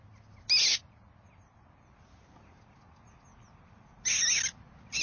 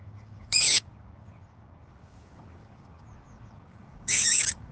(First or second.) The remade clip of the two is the second